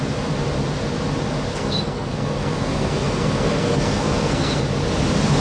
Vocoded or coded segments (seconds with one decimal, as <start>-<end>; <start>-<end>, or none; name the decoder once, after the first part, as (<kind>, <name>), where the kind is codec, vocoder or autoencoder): 1.5-4.6 (codec, SNAC)

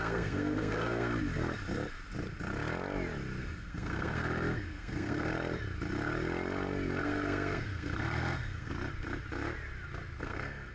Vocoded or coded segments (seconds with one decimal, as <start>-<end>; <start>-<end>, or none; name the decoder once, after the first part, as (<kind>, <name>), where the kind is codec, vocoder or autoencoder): 0.0-1.1 (codec, SNAC); 3.4-5.3; 7.0-8.7; 10.2-10.7

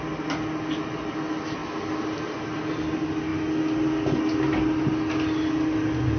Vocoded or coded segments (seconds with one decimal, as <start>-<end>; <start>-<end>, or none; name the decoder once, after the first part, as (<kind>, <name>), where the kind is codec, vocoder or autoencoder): none

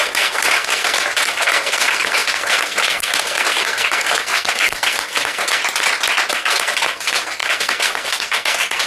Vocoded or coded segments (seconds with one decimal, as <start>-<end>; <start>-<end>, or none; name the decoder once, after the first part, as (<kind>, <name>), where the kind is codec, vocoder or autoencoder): 0.0-5.6 (codec, SNAC); 6.3-8.9

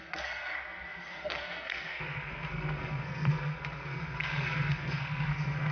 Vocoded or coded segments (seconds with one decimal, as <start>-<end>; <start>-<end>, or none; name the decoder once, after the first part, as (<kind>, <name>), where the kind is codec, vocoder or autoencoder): 0.0-5.7 (codec, SNAC)